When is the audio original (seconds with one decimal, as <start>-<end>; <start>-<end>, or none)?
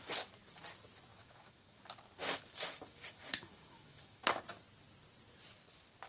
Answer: 0.0-1.1; 1.8-2.2; 4.4-6.1